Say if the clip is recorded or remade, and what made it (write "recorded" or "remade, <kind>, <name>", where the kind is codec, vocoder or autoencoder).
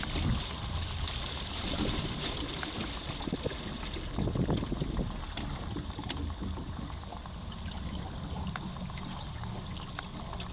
recorded